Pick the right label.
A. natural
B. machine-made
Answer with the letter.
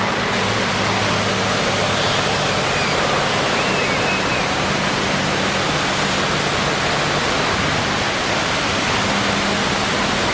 A